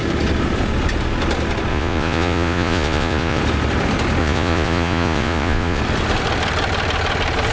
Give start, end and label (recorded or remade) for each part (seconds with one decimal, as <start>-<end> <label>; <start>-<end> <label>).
0.0-1.7 recorded; 1.7-3.4 remade; 3.4-4.2 recorded; 4.2-5.8 remade; 5.8-7.5 recorded